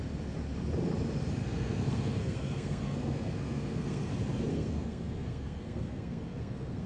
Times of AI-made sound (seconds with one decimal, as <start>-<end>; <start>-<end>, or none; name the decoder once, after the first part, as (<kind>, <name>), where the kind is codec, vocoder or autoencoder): 1.4-4.1 (codec, SNAC); 4.5-6.9

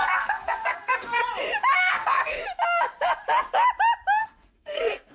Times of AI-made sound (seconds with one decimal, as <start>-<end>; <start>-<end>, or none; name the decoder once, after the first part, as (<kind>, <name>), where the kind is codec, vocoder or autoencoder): 0.0-1.2 (codec, SNAC); 1.8-2.4; 4.2-5.1

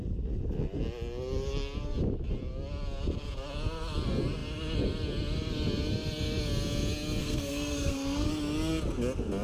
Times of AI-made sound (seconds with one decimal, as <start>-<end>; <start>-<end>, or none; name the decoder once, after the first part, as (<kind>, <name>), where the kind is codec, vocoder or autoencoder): 7.2-8.3 (codec, SNAC)

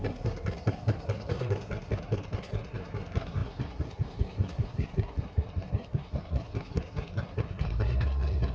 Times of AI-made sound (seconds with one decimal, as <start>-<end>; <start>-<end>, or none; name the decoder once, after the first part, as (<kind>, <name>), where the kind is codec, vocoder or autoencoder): 0.0-8.5 (codec, SNAC)